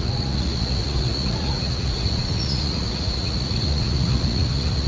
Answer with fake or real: fake